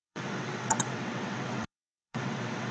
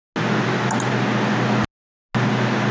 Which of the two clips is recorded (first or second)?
second